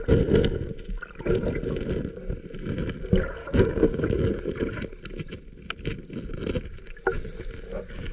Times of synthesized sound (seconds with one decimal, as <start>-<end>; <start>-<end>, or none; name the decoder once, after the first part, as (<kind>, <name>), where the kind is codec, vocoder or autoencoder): 3.4-4.4 (codec, DAC)

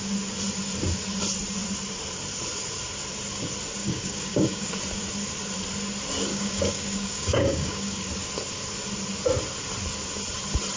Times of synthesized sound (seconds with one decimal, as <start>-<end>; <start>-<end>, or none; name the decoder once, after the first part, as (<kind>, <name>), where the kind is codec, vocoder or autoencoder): 3.8-4.7 (codec, DAC); 6.3-8.1